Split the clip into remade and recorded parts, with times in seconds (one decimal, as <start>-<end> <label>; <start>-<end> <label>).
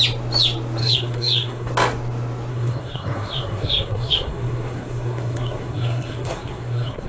0.0-0.8 recorded; 0.8-1.7 remade; 1.7-2.5 recorded; 2.5-7.1 remade